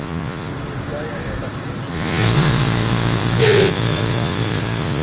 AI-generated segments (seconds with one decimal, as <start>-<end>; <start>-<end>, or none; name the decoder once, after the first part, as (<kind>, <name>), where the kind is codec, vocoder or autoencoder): 0.0-0.5 (vocoder, Vocos); 1.9-5.0